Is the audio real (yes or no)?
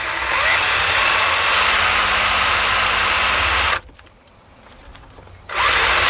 yes